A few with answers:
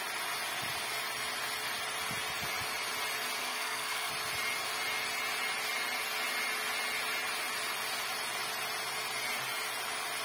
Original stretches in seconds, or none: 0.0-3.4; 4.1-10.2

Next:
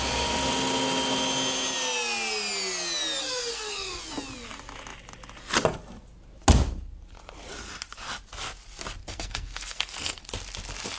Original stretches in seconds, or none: 0.0-3.2; 4.0-9.0; 10.3-11.0

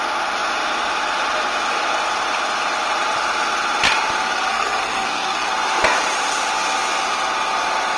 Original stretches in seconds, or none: 0.0-4.5; 5.5-8.0

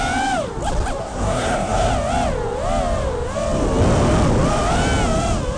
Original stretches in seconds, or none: 0.0-1.0; 1.9-5.6

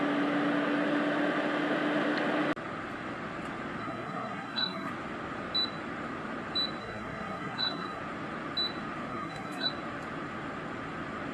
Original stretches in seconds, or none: 0.0-3.8; 4.9-6.8; 8.0-9.1; 9.7-11.3

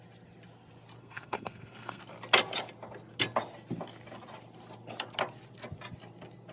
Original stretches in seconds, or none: 0.0-1.0; 2.0-6.5

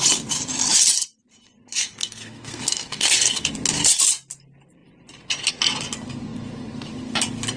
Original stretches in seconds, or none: 0.0-1.8; 3.5-7.6

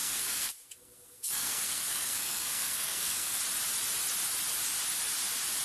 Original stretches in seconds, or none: 3.4-5.6